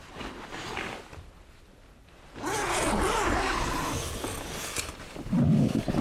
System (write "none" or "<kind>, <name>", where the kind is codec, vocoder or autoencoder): none